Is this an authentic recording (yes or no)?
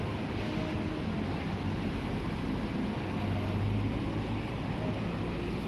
yes